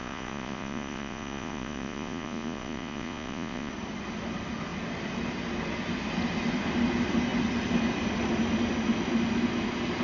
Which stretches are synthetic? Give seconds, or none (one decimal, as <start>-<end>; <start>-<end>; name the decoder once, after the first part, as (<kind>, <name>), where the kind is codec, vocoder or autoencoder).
0.0-3.7 (vocoder, Vocos)